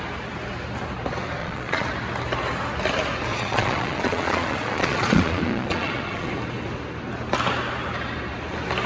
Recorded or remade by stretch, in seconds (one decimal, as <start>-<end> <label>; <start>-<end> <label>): 0.0-1.4 recorded; 1.4-1.9 remade; 1.9-3.3 recorded; 3.3-6.3 remade; 6.3-8.9 recorded